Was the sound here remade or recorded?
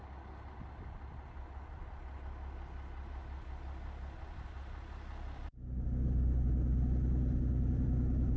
recorded